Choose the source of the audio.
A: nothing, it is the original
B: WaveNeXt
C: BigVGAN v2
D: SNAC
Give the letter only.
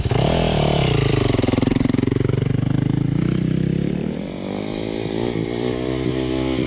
C